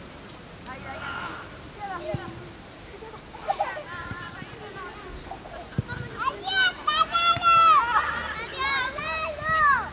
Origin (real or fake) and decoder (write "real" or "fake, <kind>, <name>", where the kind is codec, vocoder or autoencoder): real